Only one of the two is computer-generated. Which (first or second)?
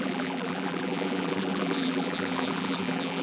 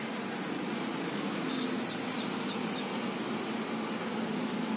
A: first